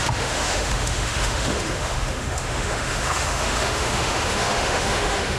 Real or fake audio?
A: fake